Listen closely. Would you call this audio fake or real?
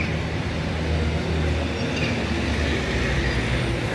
real